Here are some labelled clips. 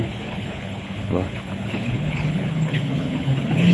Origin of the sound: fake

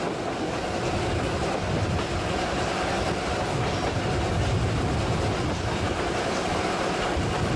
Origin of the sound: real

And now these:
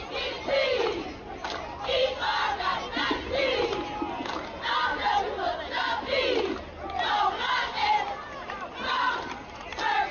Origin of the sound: real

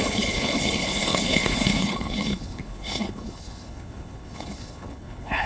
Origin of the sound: fake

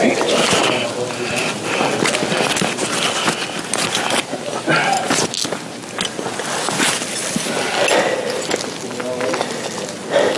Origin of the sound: real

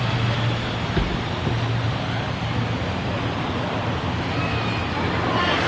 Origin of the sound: real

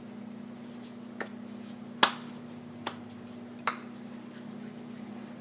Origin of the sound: real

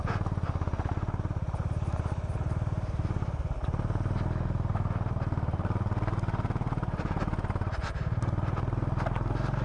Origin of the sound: real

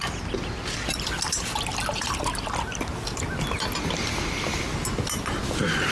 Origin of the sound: real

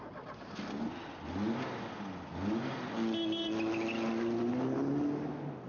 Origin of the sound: real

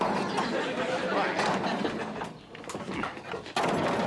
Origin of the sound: real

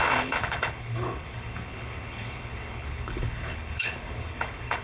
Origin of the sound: fake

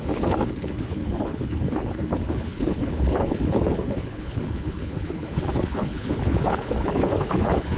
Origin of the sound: fake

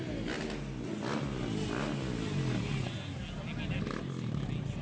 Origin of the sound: real